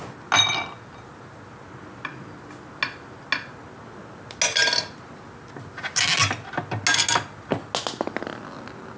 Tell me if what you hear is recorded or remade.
recorded